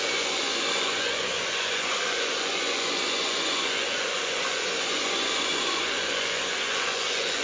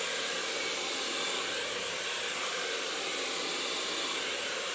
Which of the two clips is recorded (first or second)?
second